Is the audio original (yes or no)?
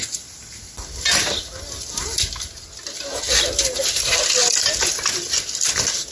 yes